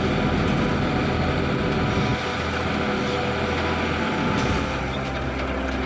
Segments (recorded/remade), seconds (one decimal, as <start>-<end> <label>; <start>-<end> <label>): 0.0-5.9 recorded